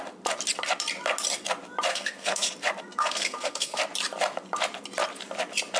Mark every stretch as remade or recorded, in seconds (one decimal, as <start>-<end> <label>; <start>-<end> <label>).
0.0-1.9 recorded; 1.9-2.5 remade; 2.5-2.9 recorded; 2.9-3.8 remade; 3.8-5.8 recorded